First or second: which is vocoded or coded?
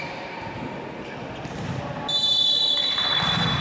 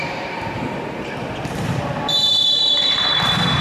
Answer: second